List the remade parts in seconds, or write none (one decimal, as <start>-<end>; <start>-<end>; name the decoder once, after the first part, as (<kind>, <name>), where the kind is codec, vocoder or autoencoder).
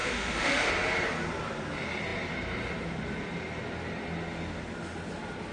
0.0-0.7 (autoencoder, DAC-VAE)